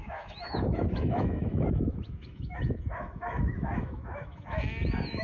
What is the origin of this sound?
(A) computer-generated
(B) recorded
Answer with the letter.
A